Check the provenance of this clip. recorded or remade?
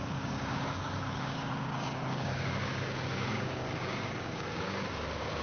remade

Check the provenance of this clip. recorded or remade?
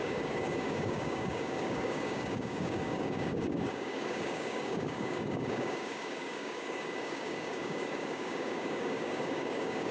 remade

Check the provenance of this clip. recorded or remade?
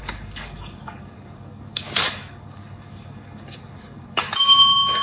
remade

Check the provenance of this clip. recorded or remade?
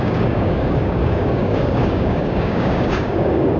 remade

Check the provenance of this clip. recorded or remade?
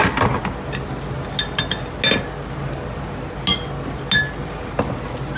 recorded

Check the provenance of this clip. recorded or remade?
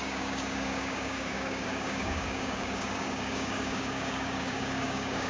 remade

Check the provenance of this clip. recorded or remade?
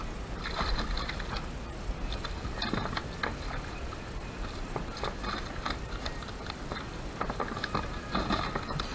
recorded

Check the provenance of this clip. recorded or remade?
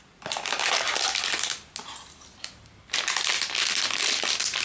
recorded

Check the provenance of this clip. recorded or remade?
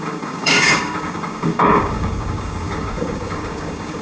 remade